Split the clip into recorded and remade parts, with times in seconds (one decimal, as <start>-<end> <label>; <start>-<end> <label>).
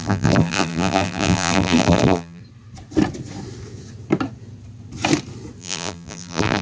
0.0-2.4 remade; 2.4-5.6 recorded; 5.6-6.6 remade